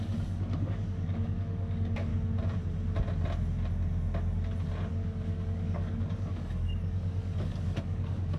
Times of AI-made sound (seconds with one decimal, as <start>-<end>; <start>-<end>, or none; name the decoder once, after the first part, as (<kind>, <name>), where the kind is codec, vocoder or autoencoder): 0.0-2.1 (codec, DAC); 4.9-8.4